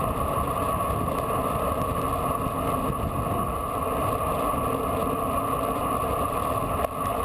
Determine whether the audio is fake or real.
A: real